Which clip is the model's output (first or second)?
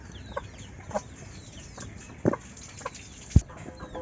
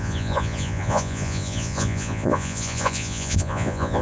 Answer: second